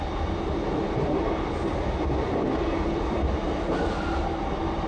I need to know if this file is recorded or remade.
recorded